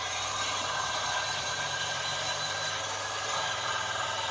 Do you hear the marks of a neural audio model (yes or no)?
yes